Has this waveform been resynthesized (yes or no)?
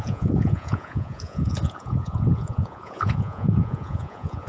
yes